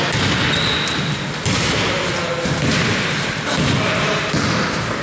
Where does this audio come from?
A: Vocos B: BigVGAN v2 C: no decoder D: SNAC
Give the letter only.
C